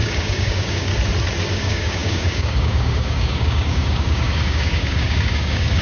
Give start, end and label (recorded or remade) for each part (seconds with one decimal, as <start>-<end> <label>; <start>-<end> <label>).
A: 0.0-0.9 remade; 0.9-1.5 recorded; 1.5-5.8 remade